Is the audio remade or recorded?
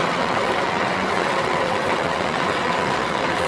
remade